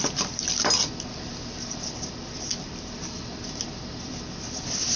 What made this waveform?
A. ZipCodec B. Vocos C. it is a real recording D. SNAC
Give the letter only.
C